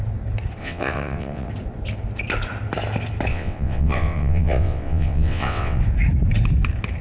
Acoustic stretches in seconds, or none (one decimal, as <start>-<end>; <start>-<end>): 0.0-0.6; 1.5-3.3; 5.8-7.0